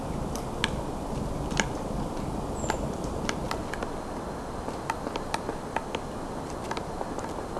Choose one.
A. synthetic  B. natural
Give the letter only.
B